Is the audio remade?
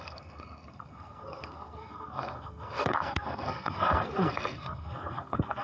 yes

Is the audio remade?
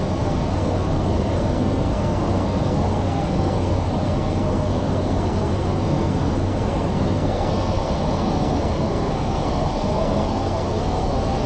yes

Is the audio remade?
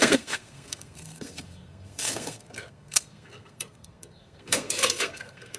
yes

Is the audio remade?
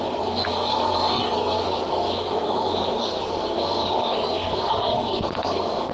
yes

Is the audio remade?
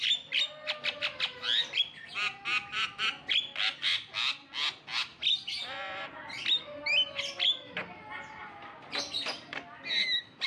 no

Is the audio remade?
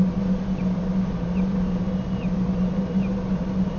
no